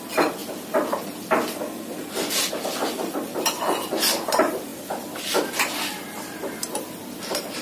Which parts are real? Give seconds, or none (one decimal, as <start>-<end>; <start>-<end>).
0.4-4.3; 4.7-6.6